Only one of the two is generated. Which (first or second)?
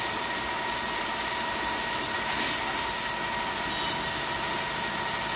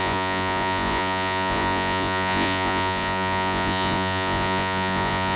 second